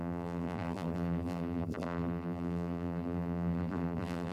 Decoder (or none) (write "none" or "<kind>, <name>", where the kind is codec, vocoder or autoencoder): vocoder, BigVGAN v2